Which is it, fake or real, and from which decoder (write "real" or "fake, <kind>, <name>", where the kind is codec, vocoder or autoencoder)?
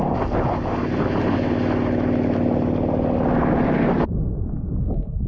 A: real